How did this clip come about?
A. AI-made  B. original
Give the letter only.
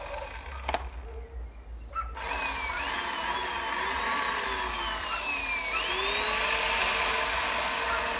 B